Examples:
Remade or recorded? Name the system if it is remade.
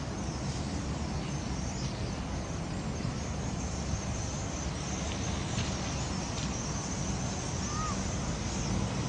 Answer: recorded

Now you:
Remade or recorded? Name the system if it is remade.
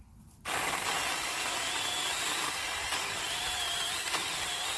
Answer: recorded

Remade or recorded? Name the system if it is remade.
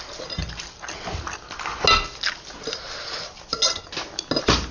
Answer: recorded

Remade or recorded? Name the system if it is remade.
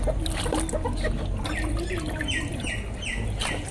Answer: recorded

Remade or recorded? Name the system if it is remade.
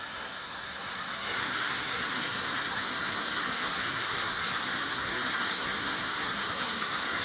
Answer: remade, codec, SNAC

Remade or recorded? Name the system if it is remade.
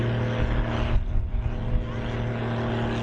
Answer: recorded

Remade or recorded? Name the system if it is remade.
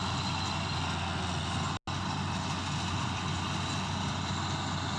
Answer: recorded